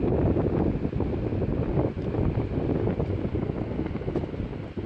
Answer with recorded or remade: recorded